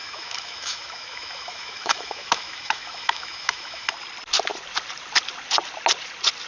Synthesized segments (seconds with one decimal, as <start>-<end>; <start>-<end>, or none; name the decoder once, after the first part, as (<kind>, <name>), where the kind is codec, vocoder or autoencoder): 0.0-3.9 (autoencoder, DAC-VAE)